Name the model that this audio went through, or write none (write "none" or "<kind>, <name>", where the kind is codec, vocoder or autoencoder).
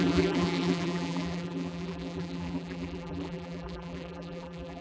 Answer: vocoder, BigVGAN v2